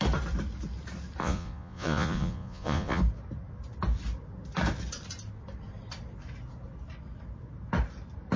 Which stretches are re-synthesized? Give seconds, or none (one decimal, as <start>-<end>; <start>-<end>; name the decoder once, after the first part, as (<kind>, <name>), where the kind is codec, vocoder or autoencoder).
1.2-3.0 (vocoder, Vocos)